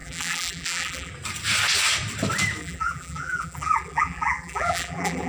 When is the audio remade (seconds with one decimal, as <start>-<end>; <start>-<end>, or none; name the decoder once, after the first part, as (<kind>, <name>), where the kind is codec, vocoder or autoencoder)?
0.0-1.1 (vocoder, BigVGAN v2); 2.6-5.3